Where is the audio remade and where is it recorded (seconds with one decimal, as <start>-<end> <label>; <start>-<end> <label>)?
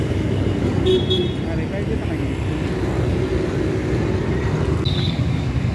0.0-0.9 remade; 0.9-4.3 recorded; 4.3-5.7 remade